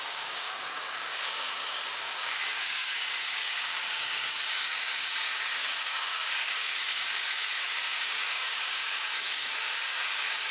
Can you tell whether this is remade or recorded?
remade